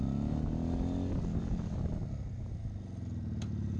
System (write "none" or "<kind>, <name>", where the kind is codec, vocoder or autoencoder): none